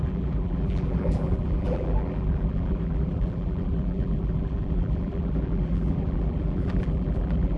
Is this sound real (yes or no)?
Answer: no